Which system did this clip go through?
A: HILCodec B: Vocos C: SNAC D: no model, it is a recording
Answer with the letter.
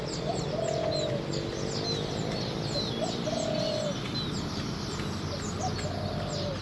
D